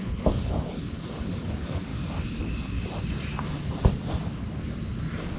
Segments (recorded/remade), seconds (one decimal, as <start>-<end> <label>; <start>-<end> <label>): 0.0-1.9 remade; 1.9-5.4 recorded